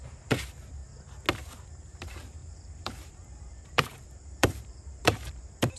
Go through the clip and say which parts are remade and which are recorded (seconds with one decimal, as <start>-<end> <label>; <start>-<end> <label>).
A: 0.0-0.8 remade; 0.8-1.7 recorded; 1.7-5.8 remade

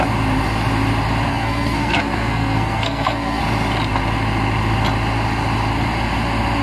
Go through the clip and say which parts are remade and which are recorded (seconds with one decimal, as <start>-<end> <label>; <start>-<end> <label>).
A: 0.0-1.3 recorded; 1.3-3.4 remade; 3.4-6.6 recorded